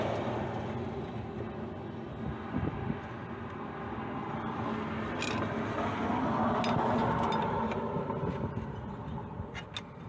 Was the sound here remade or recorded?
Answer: recorded